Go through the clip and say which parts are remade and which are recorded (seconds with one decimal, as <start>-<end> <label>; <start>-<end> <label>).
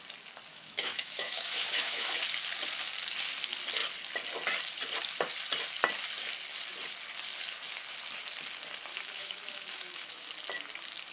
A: 0.0-0.5 recorded; 0.5-2.2 remade; 2.2-8.9 recorded; 8.9-10.3 remade; 10.3-11.1 recorded